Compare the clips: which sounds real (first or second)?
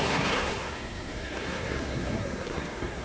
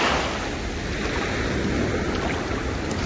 second